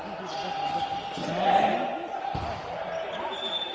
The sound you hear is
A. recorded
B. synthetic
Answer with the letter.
A